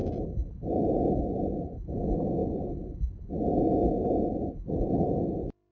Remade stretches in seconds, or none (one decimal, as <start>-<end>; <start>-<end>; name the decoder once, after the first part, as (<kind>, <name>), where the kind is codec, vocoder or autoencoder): none

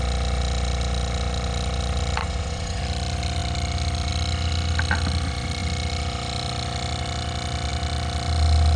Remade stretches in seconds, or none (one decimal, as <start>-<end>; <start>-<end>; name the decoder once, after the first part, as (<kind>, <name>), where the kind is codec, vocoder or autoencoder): 2.2-2.8 (vocoder, WaveNeXt)

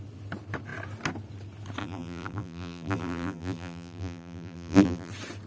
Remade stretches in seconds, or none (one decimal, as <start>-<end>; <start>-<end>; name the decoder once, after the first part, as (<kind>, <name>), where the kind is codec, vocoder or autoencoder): 1.8-5.1 (vocoder, BigVGAN v2)

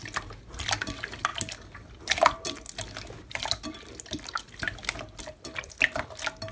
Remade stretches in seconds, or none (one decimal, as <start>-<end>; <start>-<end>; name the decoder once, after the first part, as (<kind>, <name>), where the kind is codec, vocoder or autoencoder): none

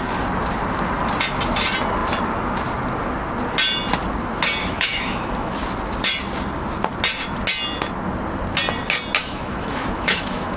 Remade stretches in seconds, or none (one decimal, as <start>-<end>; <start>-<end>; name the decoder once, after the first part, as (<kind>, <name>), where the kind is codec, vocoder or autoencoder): 4.6-5.6 (autoencoder, DAC-VAE); 9.2-10.6

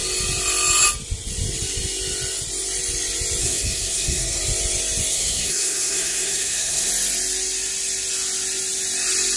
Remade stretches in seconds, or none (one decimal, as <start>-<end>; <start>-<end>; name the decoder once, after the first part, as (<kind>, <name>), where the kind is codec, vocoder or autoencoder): 3.4-4.4 (codec, SNAC); 5.1-6.9

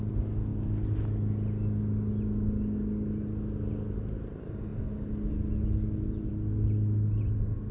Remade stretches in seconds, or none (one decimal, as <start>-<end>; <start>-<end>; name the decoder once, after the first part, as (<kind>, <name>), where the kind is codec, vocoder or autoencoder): none